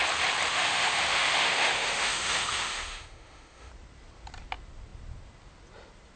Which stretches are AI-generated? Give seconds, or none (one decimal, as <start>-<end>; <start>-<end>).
0.5-3.7